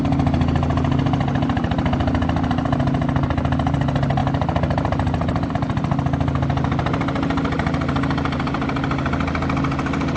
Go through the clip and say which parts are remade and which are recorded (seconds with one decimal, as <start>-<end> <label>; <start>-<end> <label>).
0.0-10.2 recorded